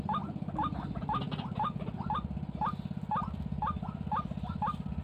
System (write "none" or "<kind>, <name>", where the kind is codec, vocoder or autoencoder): none